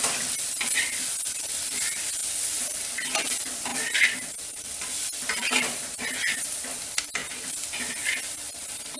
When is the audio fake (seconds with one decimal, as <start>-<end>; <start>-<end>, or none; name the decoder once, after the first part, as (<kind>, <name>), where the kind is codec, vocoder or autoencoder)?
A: 0.0-7.2 (vocoder, BigVGAN v2); 8.6-9.0